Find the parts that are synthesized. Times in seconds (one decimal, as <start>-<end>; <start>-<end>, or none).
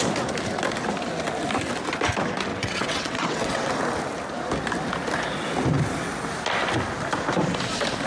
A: 2.5-3.7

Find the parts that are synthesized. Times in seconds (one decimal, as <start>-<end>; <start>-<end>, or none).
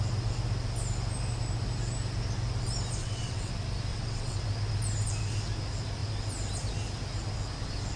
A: 3.0-3.5; 3.9-4.4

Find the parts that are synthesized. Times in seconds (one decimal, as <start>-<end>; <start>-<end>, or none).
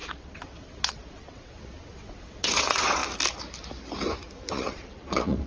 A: 0.0-3.0; 4.5-5.5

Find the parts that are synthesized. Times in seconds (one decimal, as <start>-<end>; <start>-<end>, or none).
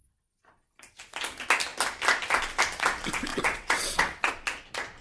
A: 3.3-4.3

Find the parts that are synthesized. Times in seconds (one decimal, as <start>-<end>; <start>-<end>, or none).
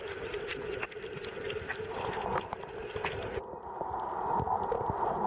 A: none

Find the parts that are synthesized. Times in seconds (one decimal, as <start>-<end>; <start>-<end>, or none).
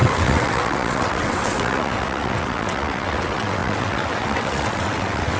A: 0.0-5.4